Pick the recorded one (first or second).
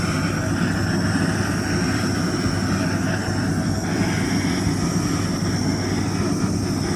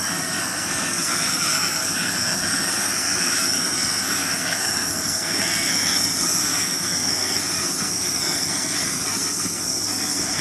first